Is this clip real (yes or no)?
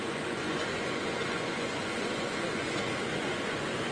no